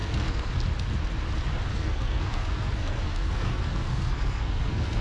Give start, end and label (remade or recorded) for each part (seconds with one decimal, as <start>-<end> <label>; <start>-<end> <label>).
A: 0.0-0.6 remade; 0.6-1.7 recorded; 1.7-5.0 remade